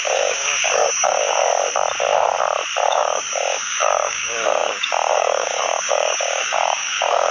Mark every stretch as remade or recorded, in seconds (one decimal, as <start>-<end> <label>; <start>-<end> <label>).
0.0-1.4 remade; 1.4-2.9 recorded; 2.9-7.3 remade